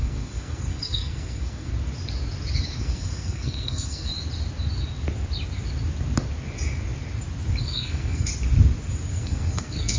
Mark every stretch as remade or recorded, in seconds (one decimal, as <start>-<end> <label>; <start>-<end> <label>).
0.0-1.7 remade; 1.7-2.8 recorded; 2.8-4.1 remade; 4.1-7.6 recorded; 7.6-8.3 remade; 8.3-9.1 recorded; 9.1-10.0 remade